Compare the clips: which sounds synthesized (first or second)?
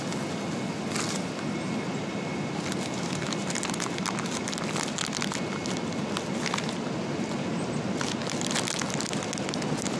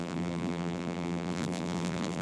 second